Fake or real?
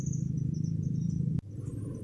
real